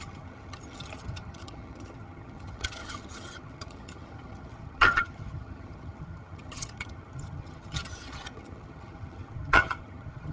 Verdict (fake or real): fake